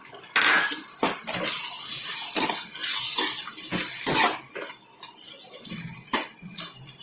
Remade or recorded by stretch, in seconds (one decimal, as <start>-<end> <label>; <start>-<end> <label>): 0.0-7.0 recorded